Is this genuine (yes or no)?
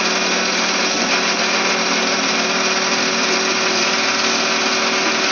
yes